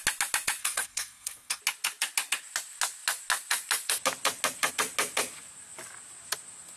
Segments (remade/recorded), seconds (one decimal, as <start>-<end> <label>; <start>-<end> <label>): 0.0-0.6 recorded; 0.6-1.6 remade; 1.6-6.8 recorded